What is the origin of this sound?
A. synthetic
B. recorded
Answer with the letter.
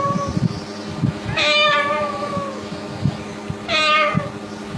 B